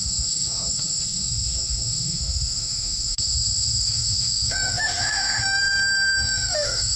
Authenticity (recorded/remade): remade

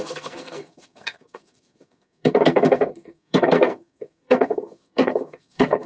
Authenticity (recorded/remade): remade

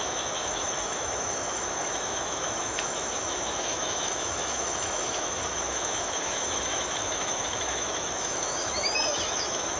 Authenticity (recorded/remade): remade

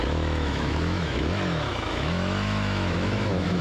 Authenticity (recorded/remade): remade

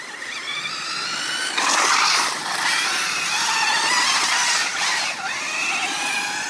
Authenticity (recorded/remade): recorded